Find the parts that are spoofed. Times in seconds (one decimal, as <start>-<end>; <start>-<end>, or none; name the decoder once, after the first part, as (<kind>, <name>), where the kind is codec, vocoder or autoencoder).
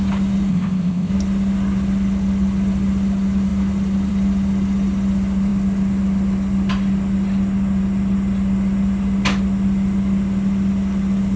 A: 0.5-1.1 (codec, ZipCodec)